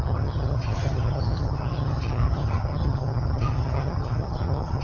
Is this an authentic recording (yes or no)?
no